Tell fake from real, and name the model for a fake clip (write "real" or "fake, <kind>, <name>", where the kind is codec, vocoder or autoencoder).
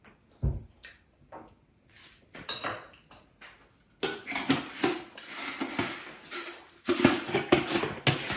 real